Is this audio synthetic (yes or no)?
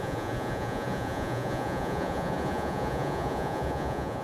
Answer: yes